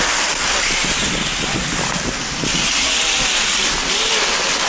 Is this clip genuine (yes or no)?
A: yes